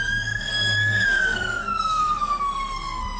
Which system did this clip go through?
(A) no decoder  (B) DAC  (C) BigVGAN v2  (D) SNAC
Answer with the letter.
D